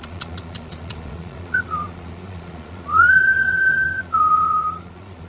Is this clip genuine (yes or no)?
no